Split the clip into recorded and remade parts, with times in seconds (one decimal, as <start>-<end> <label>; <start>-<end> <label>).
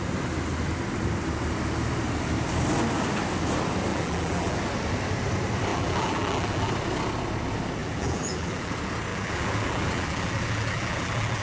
0.0-3.9 recorded; 3.9-4.6 remade; 4.6-5.7 recorded; 5.7-6.7 remade; 6.7-7.8 recorded; 7.8-8.7 remade; 8.7-9.1 recorded; 9.1-11.4 remade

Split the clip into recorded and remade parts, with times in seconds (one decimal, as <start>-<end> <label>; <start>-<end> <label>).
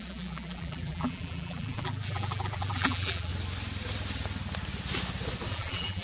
0.0-3.3 remade; 3.3-5.5 recorded; 5.5-6.0 remade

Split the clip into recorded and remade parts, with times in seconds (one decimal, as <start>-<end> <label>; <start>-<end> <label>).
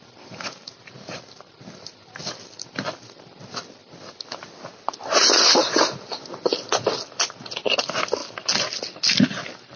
0.0-9.8 recorded